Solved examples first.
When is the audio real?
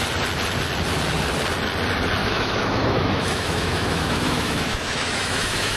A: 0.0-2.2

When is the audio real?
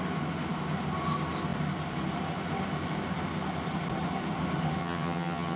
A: 0.0-4.8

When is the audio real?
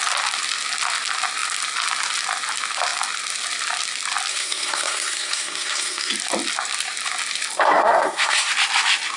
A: 0.0-4.3; 6.1-7.8; 8.5-9.2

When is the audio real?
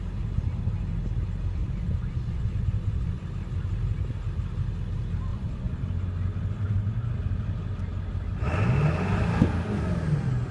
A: 0.0-1.6; 3.2-5.3; 5.8-10.5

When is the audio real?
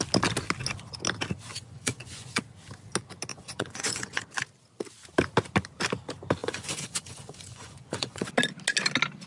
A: 0.0-1.5; 2.4-3.3; 4.2-6.4; 8.3-9.3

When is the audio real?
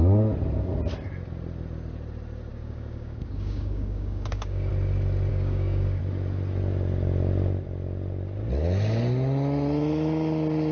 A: 0.0-2.5; 4.7-5.3; 6.0-10.7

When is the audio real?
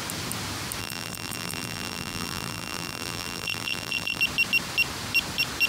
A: 0.0-0.8; 4.2-5.7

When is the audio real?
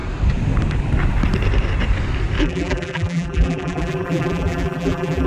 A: 0.0-2.4